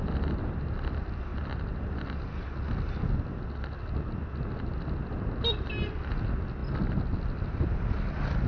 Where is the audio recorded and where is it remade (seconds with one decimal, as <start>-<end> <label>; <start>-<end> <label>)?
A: 0.0-8.5 recorded